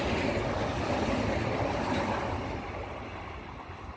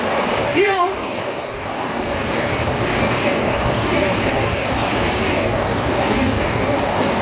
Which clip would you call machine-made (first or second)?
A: second